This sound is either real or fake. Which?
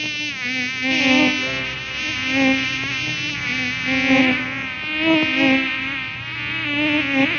real